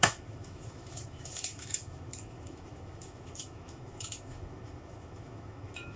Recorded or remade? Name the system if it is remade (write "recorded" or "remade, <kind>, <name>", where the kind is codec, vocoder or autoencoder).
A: remade, autoencoder, DAC-VAE